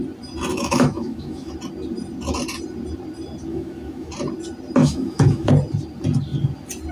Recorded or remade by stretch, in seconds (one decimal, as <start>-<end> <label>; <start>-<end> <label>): 0.0-0.5 recorded; 0.5-1.5 remade; 1.5-3.5 recorded; 3.5-4.1 remade; 4.1-4.8 recorded; 4.8-5.5 remade; 5.5-6.9 recorded